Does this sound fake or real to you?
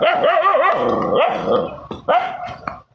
real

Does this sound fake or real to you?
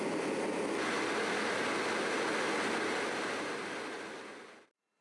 real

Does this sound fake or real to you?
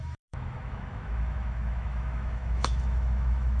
fake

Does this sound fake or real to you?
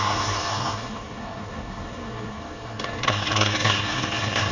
fake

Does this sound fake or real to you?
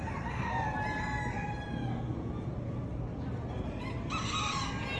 real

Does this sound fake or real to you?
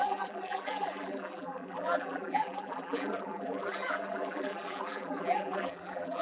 fake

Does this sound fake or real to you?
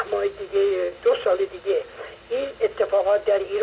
real